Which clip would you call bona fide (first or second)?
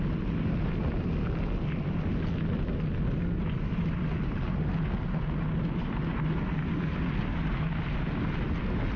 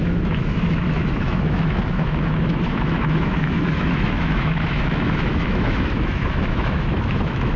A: first